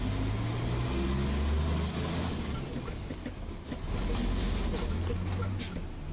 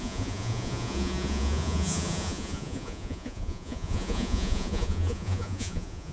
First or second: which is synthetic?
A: second